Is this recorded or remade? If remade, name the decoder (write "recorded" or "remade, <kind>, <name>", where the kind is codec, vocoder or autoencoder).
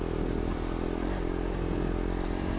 recorded